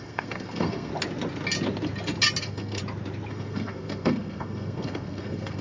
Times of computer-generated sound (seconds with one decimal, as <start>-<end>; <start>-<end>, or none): 0.0-0.9; 2.4-2.8; 3.3-5.6